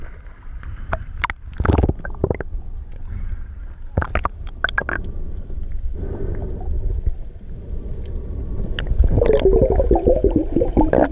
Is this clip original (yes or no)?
yes